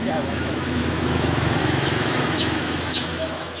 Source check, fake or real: fake